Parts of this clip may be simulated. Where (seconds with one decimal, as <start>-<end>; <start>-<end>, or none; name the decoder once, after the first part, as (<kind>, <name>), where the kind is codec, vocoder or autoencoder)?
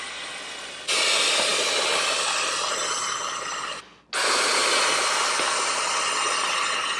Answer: none